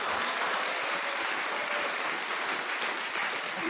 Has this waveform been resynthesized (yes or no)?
no